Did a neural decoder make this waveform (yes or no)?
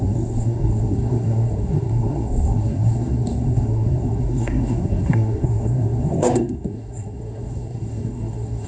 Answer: yes